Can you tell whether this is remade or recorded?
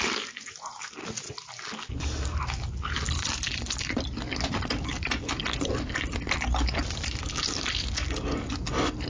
recorded